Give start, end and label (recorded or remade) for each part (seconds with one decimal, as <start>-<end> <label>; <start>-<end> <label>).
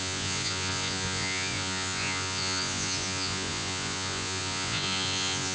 0.0-5.5 remade